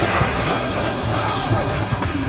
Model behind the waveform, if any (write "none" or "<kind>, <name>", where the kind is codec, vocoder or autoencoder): codec, SNAC